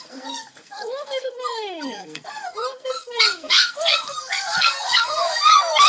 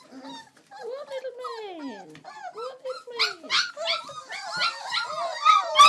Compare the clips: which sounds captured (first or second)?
second